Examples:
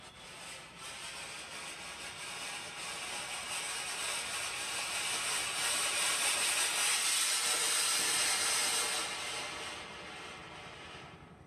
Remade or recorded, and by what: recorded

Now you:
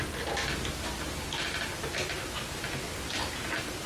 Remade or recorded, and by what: recorded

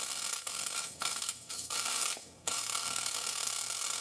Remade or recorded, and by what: remade, codec, SNAC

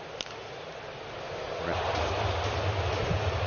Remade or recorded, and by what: recorded